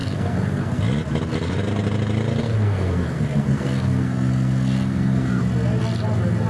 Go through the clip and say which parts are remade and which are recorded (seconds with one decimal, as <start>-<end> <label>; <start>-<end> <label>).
0.0-0.8 remade; 0.8-2.4 recorded; 2.4-5.4 remade; 5.4-6.5 recorded

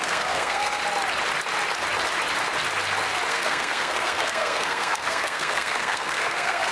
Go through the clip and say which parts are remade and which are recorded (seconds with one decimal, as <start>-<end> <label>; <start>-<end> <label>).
0.0-0.8 remade; 0.8-3.3 recorded; 3.3-6.7 remade

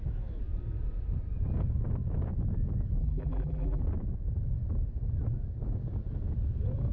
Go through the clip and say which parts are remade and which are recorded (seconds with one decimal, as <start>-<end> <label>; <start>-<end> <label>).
0.0-3.0 recorded; 3.0-3.8 remade; 3.8-6.9 recorded

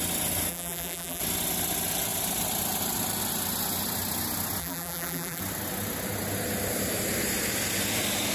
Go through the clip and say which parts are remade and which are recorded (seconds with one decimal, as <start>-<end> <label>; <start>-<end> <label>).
0.0-0.5 recorded; 0.5-1.2 remade; 1.2-4.6 recorded; 4.6-5.4 remade; 5.4-8.3 recorded

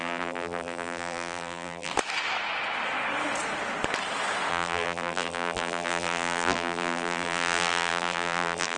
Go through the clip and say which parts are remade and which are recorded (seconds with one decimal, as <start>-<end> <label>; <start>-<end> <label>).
0.0-1.9 remade; 1.9-4.5 recorded; 4.5-8.8 remade

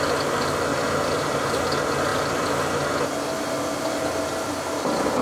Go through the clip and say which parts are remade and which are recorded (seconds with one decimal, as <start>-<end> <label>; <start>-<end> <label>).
0.0-0.7 recorded; 0.7-1.6 remade; 1.6-5.2 recorded